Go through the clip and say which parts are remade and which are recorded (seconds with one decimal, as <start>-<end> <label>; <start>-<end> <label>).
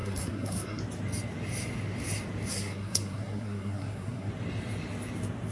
0.0-0.8 remade; 0.8-2.5 recorded; 2.5-4.3 remade; 4.3-5.5 recorded